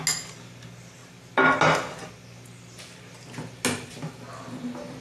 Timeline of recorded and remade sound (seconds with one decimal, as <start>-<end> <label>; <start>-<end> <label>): 0.0-5.0 recorded